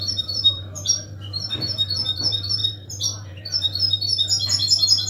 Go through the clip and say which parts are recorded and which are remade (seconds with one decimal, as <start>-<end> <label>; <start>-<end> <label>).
0.0-4.1 remade; 4.1-5.1 recorded